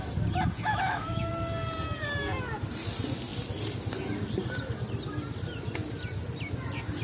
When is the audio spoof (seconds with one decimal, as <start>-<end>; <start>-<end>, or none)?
0.7-1.3